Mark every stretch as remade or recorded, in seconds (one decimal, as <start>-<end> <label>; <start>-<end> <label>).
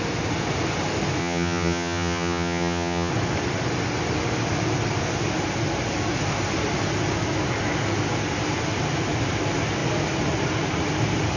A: 0.0-1.2 recorded; 1.2-3.1 remade; 3.1-11.4 recorded